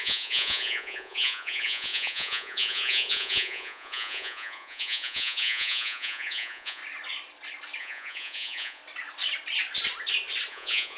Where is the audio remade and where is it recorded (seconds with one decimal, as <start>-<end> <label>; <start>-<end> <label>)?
0.0-6.8 remade; 6.8-7.8 recorded; 7.8-8.8 remade; 8.8-10.5 recorded; 10.5-11.0 remade